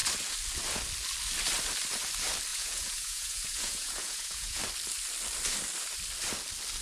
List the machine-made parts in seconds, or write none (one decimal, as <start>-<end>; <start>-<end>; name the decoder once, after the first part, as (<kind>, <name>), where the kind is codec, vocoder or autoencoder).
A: 2.5-4.6 (vocoder, Vocos)